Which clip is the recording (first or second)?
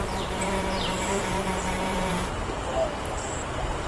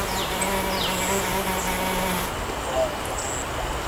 second